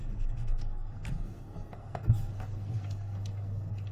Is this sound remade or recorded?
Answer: remade